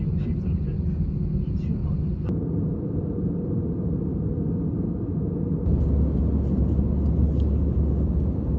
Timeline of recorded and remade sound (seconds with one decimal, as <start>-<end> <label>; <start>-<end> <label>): 0.0-0.7 remade; 0.7-1.4 recorded; 1.4-1.8 remade; 1.8-2.7 recorded; 2.7-4.1 remade; 4.1-8.6 recorded